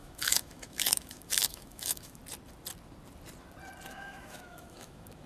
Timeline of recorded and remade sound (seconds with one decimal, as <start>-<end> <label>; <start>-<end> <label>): 0.0-2.2 remade; 2.2-3.9 recorded; 3.9-5.3 remade